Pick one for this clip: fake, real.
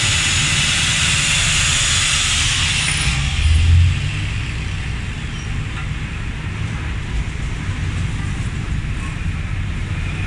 real